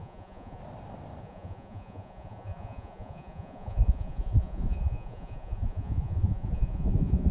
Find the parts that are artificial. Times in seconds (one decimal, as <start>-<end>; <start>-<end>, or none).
0.0-0.6; 1.2-7.3